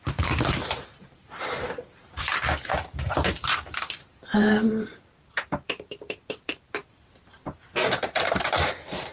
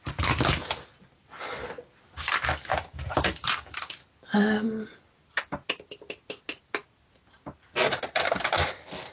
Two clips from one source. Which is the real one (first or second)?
second